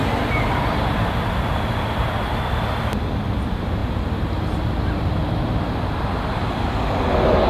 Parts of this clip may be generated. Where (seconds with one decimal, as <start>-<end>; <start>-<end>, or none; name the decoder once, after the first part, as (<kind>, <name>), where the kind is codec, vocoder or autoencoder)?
none